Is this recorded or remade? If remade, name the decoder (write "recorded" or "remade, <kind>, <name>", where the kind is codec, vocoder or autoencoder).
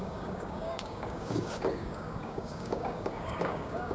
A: remade, codec, DAC